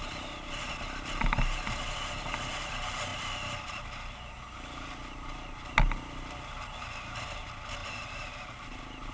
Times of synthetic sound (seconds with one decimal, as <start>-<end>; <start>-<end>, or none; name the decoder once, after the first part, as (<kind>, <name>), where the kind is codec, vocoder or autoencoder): none